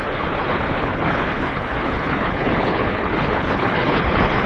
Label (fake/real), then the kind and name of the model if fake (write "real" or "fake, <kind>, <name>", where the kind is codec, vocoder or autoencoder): fake, codec, HILCodec